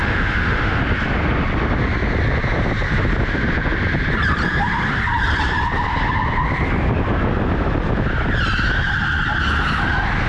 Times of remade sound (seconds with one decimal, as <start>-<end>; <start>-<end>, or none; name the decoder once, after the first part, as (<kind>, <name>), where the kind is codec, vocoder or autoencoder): 0.0-0.8 (autoencoder, DAC-VAE)